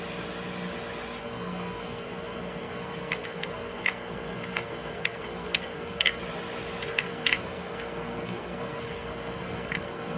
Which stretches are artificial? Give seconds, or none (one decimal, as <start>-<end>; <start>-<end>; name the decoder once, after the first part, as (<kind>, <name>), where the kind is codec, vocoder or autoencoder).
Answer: 1.2-6.2 (codec, SNAC); 6.9-10.2